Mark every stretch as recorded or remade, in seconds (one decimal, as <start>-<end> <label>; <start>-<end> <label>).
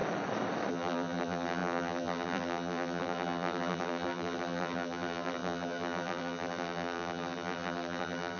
0.0-0.7 recorded; 0.7-8.4 remade